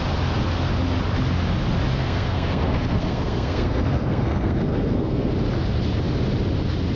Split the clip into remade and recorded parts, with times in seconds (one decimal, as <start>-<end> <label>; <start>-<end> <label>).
0.0-1.9 recorded; 1.9-5.3 remade; 5.3-7.0 recorded